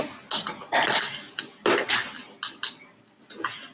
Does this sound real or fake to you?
real